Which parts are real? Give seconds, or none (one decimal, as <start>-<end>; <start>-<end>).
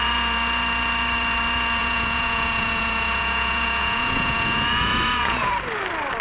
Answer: 0.0-1.8; 5.5-6.2